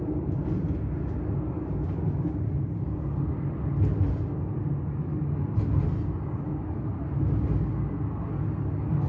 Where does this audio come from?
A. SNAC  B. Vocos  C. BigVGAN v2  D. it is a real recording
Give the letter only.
D